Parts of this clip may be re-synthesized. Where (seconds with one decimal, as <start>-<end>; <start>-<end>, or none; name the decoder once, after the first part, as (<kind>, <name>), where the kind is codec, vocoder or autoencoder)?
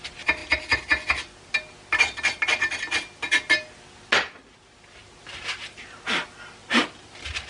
6.6-7.1 (vocoder, BigVGAN v2)